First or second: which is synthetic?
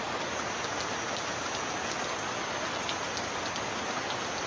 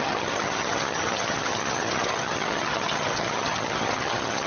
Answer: second